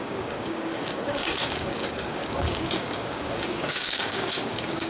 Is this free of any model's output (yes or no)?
no